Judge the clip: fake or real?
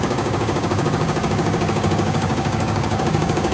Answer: fake